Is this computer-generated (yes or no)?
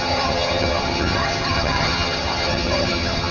yes